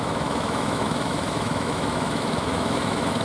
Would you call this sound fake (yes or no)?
yes